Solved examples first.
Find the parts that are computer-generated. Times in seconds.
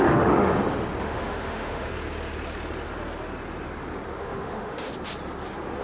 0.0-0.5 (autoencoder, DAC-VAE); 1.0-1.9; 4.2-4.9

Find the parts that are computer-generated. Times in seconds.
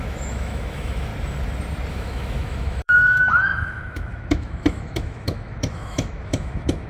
0.0-1.1 (autoencoder, DAC-VAE); 1.9-6.9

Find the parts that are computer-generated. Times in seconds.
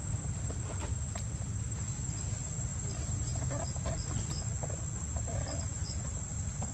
none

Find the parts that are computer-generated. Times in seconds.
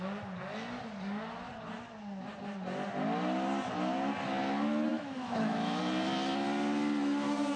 4.9-5.8 (autoencoder, DAC-VAE)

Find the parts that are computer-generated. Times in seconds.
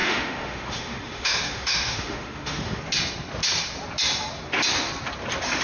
0.0-2.8 (autoencoder, DAC-VAE)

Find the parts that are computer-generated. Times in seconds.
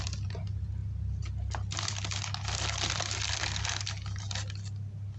none